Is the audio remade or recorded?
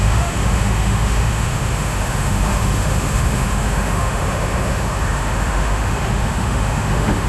remade